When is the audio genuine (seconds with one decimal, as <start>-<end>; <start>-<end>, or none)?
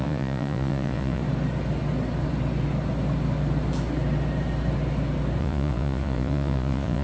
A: 1.2-5.4